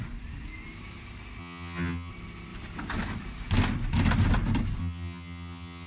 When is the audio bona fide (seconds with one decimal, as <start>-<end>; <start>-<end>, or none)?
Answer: 0.0-1.4; 2.1-4.8

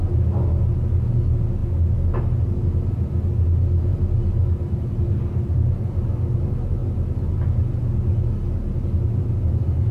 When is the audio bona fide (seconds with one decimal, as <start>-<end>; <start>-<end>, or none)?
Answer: 0.0-9.9